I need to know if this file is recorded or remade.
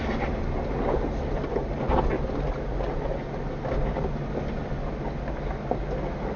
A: recorded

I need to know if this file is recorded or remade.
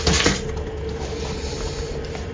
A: recorded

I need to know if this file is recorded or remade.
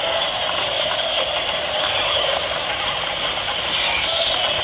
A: recorded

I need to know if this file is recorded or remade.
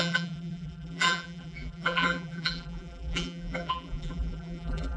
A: remade